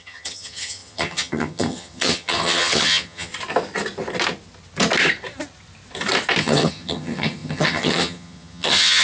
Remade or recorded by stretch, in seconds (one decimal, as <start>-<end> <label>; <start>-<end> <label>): 0.0-3.3 remade; 3.3-6.4 recorded; 6.4-9.0 remade